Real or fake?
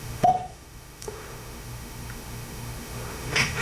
fake